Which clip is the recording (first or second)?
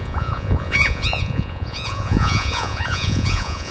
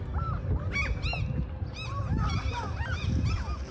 second